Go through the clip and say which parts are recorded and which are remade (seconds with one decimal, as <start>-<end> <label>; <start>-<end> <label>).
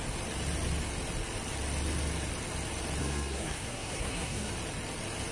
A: 0.0-3.0 recorded; 3.0-4.5 remade; 4.5-5.3 recorded